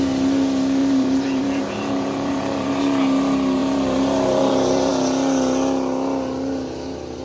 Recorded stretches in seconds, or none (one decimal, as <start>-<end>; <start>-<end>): 0.0-0.8; 2.8-3.6; 4.9-7.2